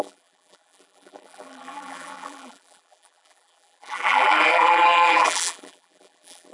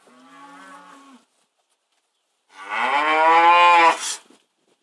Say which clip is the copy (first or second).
first